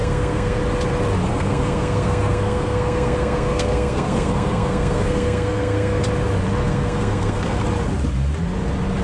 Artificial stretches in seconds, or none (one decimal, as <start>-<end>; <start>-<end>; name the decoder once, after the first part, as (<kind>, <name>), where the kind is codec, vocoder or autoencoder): 0.0-0.6 (codec, SNAC); 1.3-6.0; 6.6-7.6